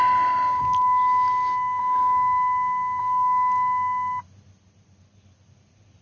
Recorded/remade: recorded